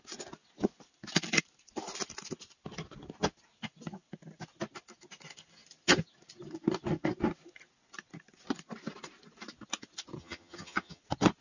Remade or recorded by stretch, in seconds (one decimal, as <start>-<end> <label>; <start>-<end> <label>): 0.0-10.2 recorded; 10.2-11.0 remade; 11.0-11.4 recorded